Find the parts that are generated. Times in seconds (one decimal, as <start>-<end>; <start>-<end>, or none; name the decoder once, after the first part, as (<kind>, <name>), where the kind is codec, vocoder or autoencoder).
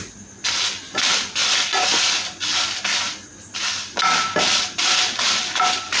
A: none